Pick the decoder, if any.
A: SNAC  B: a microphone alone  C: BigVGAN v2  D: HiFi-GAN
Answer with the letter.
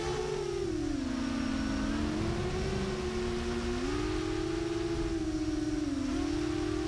B